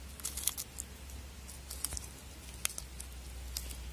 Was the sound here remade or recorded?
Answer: recorded